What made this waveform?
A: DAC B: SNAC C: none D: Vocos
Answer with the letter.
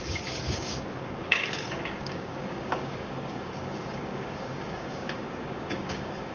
A